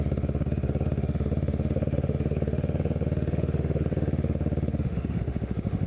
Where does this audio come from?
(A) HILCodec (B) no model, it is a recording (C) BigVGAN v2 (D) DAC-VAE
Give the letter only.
D